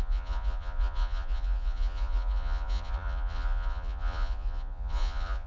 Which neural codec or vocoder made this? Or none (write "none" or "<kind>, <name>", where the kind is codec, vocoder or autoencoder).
vocoder, Vocos